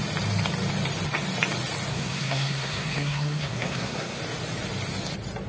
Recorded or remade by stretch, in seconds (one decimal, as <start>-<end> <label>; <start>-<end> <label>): 0.0-1.9 recorded; 1.9-4.2 remade; 4.2-5.5 recorded